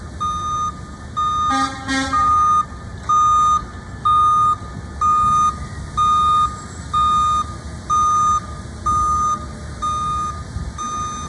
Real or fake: real